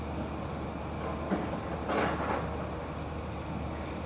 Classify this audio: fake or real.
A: real